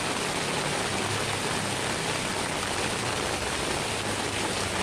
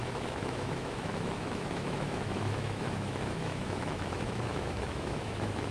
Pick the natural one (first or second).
first